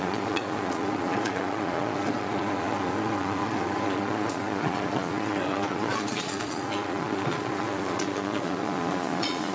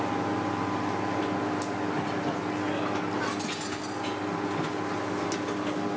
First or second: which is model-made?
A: first